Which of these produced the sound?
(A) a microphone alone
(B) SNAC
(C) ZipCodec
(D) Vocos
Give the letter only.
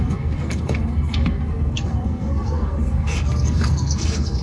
B